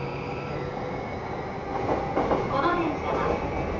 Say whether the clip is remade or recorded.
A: recorded